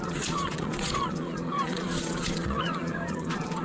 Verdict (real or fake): fake